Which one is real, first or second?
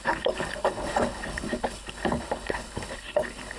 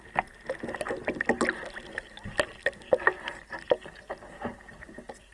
second